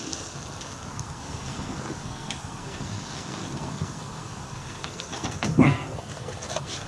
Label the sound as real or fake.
fake